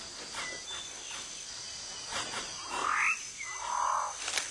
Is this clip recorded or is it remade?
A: recorded